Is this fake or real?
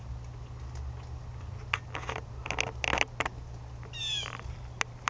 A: real